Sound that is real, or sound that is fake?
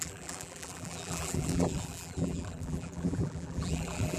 fake